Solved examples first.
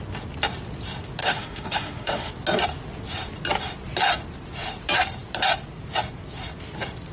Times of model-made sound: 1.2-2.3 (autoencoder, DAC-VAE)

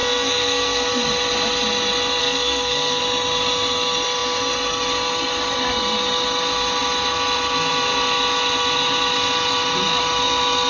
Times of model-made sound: 0.0-0.9 (codec, SNAC); 2.2-3.0

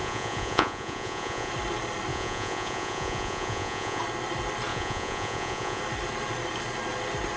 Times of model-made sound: 0.0-1.5 (vocoder, Vocos); 2.1-4.0; 4.7-5.8